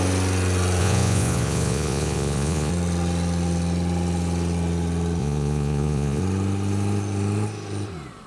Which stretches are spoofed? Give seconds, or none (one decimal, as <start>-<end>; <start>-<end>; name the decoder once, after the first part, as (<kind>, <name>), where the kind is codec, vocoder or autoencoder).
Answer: 0.8-2.7 (vocoder, Vocos); 5.2-6.2